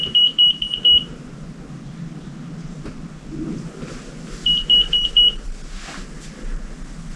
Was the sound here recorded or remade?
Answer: recorded